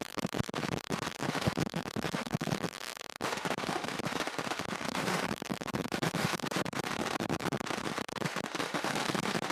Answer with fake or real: fake